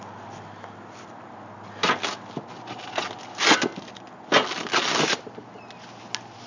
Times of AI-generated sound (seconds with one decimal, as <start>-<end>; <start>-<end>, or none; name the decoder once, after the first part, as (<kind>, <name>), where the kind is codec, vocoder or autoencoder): none